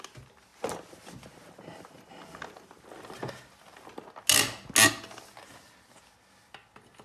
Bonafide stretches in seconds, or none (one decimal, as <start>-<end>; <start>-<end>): 0.0-7.0